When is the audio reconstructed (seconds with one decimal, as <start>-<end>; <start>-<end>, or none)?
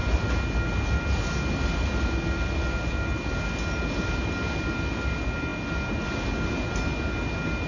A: none